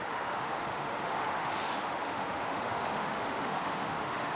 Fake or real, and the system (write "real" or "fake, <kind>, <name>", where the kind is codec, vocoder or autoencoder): fake, autoencoder, DAC-VAE